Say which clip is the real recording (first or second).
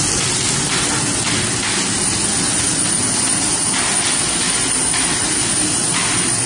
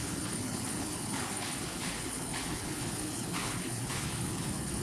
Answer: first